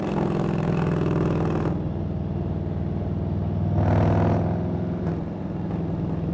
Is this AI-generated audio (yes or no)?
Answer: no